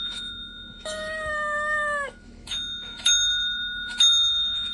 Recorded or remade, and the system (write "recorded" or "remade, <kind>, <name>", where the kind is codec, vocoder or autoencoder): remade, autoencoder, DAC-VAE